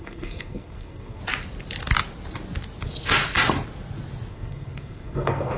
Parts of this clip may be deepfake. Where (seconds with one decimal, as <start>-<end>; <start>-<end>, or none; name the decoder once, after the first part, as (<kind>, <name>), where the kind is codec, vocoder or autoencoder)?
0.0-1.2 (codec, SNAC); 4.3-5.6